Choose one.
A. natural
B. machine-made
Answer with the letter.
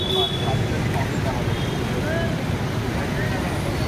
A